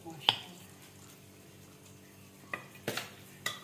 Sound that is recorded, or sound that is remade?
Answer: recorded